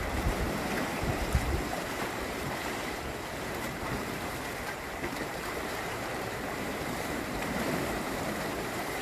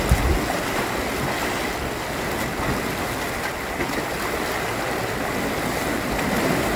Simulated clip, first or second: first